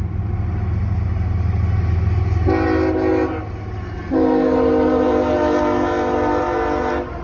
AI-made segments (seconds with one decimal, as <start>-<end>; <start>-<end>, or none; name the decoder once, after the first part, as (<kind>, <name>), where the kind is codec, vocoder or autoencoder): none